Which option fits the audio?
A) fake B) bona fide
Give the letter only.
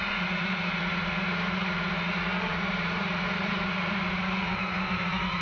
A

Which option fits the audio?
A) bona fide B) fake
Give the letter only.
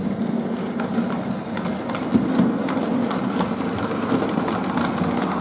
A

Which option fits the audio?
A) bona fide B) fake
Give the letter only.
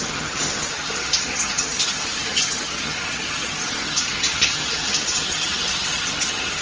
B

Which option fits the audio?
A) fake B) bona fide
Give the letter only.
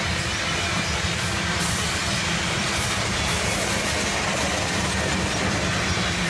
B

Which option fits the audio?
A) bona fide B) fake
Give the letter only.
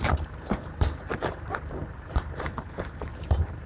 B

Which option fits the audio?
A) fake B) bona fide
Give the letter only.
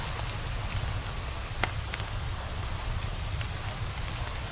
B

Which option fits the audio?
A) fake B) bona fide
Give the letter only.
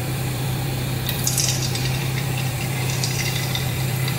A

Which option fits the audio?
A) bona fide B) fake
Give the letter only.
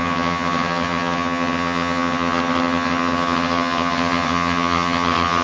B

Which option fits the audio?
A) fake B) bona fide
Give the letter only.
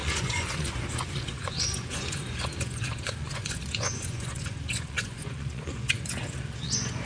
A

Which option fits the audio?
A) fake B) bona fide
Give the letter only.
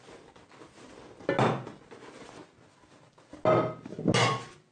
B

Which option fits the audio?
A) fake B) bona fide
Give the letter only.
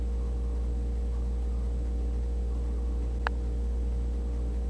B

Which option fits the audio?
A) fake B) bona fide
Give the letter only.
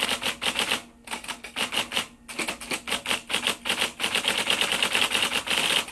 B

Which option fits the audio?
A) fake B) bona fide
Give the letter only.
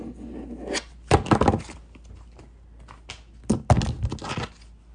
B